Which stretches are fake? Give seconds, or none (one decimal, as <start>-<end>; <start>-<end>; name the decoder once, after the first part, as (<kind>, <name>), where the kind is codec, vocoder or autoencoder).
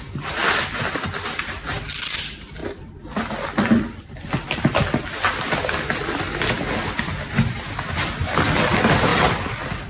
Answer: 2.6-4.6 (vocoder, BigVGAN v2); 9.1-9.9